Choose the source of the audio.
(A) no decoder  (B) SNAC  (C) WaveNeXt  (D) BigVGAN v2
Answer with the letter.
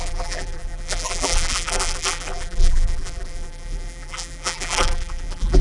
D